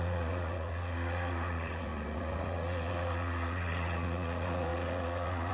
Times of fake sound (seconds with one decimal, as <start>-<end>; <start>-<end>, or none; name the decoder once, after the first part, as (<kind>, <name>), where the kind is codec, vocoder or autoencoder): 0.0-5.5 (vocoder, Vocos)